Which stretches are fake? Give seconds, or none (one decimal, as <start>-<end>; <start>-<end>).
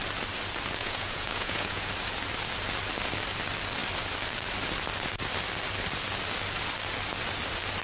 0.8-1.9